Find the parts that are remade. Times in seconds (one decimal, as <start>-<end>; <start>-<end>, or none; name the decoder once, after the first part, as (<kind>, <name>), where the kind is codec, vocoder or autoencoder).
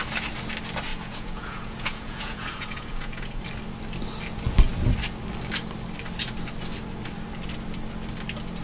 0.9-3.4 (vocoder, Vocos)